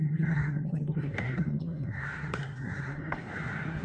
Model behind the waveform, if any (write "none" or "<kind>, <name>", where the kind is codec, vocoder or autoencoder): codec, SNAC